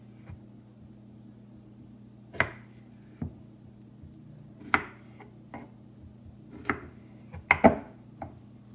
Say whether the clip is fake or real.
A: real